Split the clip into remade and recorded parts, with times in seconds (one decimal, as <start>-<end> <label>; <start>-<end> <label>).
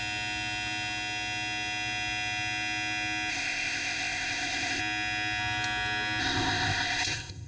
0.0-3.3 recorded; 3.3-4.8 remade; 4.8-6.2 recorded; 6.2-7.5 remade